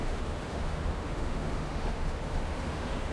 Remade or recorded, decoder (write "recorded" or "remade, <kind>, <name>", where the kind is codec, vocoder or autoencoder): remade, autoencoder, DAC-VAE